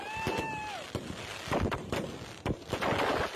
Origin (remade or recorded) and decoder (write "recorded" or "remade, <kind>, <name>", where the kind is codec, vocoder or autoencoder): recorded